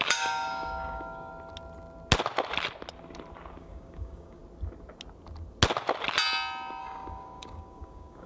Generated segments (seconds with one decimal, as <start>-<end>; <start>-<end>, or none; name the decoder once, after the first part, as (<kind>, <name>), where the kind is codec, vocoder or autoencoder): 0.0-1.3 (codec, DAC); 3.6-4.4; 6.8-8.3